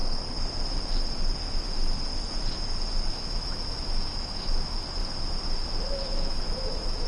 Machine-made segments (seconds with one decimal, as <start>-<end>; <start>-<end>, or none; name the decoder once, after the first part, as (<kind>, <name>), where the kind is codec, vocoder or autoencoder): 3.1-5.0 (autoencoder, DAC-VAE); 5.9-7.1